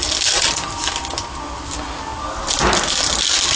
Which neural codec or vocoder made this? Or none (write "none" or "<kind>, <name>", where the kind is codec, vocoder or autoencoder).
none